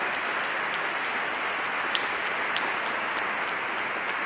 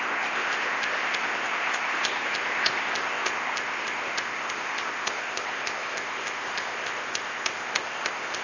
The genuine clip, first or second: first